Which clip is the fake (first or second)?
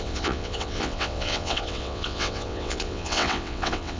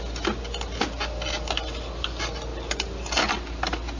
first